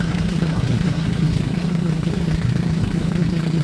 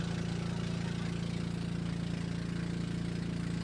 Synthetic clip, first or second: first